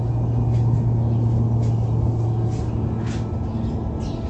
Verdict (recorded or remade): recorded